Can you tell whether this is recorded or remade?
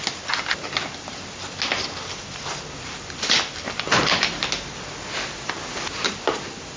recorded